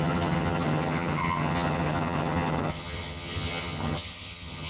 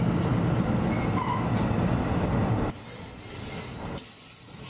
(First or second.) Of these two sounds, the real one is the second